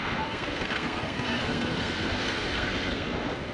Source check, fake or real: fake